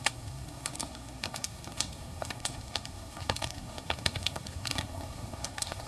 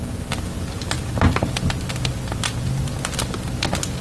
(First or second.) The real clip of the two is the second